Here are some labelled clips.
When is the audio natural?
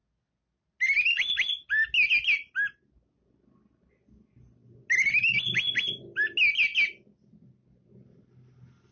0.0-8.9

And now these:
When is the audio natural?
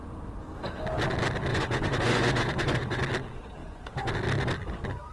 0.0-1.5; 3.0-3.6; 4.1-5.1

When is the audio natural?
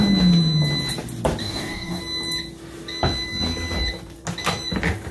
0.0-1.4; 2.0-5.1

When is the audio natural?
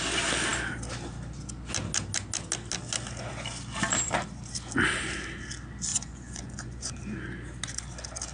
0.0-5.9; 6.9-8.3